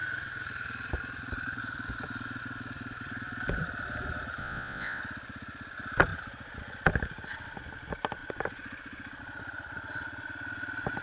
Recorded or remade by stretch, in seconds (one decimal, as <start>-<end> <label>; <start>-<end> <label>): 0.0-4.4 recorded; 4.4-5.0 remade; 5.0-11.0 recorded